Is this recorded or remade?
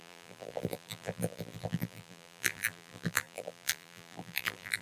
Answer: remade